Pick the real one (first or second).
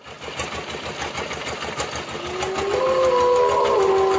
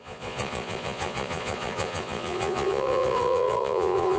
first